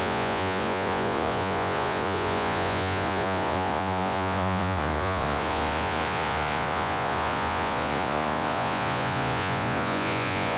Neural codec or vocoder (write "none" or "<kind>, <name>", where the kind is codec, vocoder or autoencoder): vocoder, Vocos